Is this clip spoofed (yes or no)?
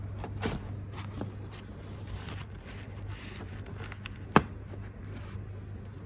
no